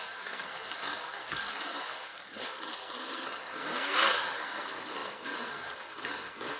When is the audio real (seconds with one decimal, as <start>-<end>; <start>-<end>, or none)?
none